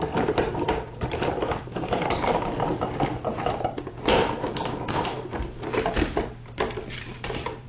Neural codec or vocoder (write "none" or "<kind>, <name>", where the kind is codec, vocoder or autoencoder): vocoder, BigVGAN v2